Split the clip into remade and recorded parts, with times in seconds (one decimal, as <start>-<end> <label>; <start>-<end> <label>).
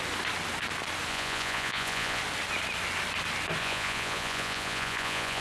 0.0-1.1 recorded; 1.1-2.2 remade; 2.2-3.6 recorded; 3.6-5.4 remade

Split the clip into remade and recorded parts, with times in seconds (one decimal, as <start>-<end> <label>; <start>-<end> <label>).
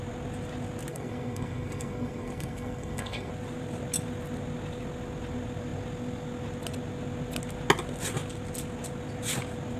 0.0-0.9 recorded; 0.9-3.3 remade; 3.3-9.8 recorded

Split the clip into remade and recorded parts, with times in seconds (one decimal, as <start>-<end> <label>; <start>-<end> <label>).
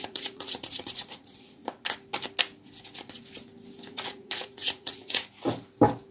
0.0-1.6 remade; 1.6-3.9 recorded; 3.9-5.2 remade; 5.2-6.1 recorded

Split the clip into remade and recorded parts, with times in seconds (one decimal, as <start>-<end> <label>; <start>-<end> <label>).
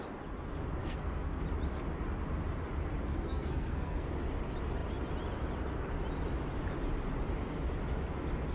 0.0-0.8 recorded; 0.8-1.4 remade; 1.4-3.1 recorded; 3.1-4.1 remade; 4.1-8.5 recorded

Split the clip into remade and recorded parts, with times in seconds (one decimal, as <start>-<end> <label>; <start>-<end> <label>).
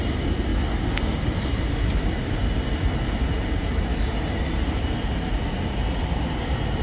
0.0-0.5 remade; 0.5-1.1 recorded; 1.1-2.4 remade; 2.4-3.3 recorded; 3.3-3.9 remade; 3.9-5.9 recorded; 5.9-6.8 remade